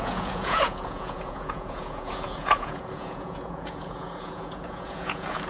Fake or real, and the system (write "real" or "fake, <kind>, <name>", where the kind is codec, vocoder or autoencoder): fake, vocoder, Vocos